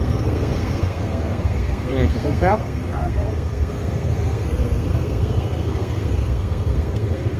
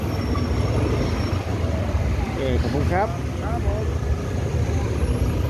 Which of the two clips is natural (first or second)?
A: second